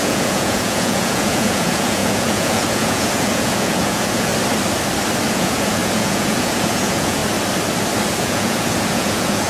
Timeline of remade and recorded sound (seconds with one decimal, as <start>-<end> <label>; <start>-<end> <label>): 0.0-4.3 remade; 4.3-5.3 recorded; 5.3-7.2 remade; 7.2-8.2 recorded; 8.2-9.5 remade